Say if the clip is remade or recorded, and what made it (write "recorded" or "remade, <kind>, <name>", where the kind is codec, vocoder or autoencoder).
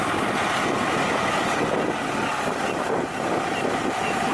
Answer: recorded